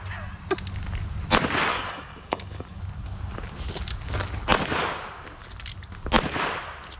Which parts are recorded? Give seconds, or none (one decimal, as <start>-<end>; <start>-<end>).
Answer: 0.0-1.7; 2.8-7.0

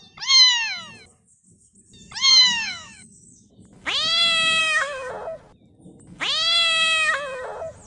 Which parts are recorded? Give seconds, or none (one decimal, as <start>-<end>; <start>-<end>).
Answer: 0.0-2.3; 3.5-4.6; 5.1-7.9